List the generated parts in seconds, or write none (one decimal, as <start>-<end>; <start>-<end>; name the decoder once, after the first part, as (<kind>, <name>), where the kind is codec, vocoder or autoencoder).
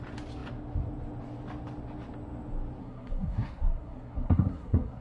2.8-5.0 (codec, SNAC)